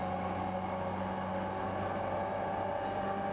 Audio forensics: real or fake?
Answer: real